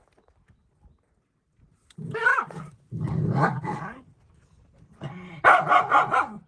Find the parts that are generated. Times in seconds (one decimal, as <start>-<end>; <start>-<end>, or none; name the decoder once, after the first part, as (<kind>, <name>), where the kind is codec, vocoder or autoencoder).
2.3-2.8 (vocoder, BigVGAN v2)